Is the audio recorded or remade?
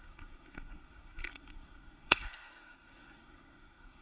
remade